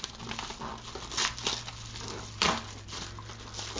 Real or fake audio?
real